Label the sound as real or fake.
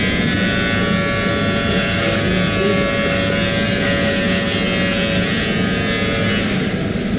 real